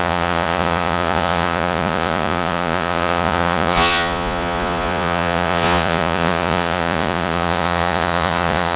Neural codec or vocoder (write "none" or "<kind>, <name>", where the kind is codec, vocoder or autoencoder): vocoder, Vocos